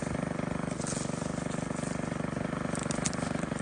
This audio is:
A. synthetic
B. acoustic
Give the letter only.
B